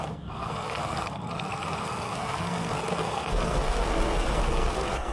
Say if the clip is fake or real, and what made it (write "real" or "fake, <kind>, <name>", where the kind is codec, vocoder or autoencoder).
fake, codec, SNAC